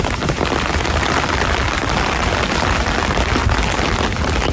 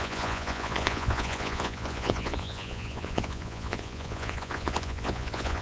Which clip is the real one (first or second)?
first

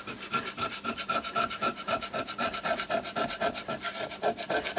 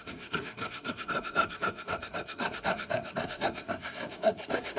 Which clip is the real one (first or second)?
first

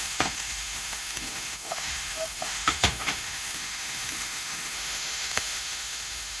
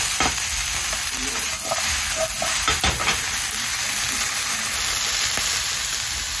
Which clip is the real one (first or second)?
second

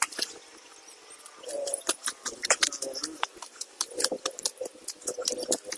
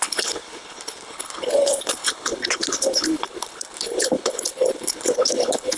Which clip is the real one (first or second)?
first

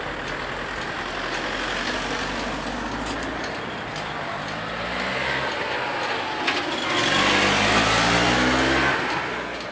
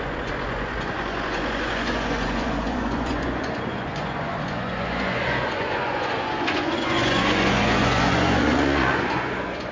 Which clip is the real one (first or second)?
first